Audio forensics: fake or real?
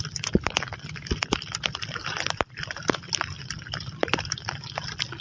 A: real